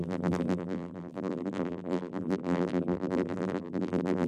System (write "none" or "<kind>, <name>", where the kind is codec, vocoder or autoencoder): vocoder, BigVGAN v2